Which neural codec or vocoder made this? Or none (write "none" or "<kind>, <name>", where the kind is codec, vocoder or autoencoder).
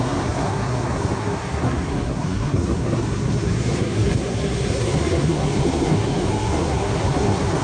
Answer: codec, SNAC